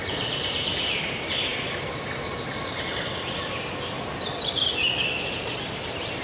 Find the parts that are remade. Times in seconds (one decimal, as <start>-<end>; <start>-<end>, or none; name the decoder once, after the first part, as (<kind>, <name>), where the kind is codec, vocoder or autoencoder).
none